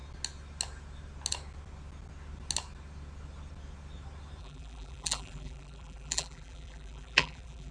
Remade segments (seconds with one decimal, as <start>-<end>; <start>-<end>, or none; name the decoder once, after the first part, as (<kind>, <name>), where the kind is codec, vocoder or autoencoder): 4.4-7.7 (vocoder, BigVGAN v2)